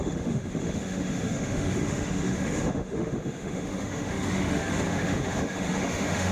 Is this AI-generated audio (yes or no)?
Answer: yes